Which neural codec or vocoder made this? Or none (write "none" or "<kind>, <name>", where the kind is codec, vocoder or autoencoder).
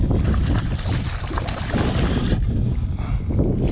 none